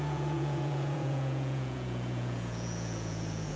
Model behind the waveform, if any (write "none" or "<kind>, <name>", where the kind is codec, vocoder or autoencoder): vocoder, Vocos